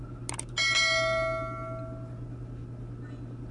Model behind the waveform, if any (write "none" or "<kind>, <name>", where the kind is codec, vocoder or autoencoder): none